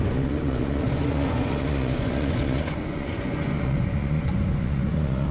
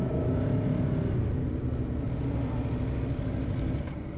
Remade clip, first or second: first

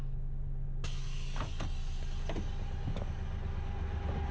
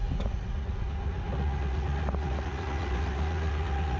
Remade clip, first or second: second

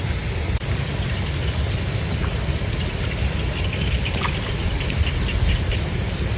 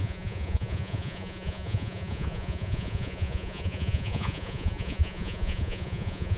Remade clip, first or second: second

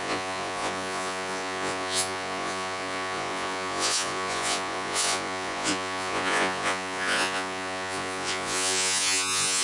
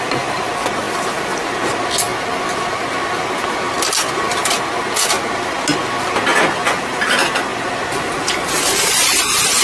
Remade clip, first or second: first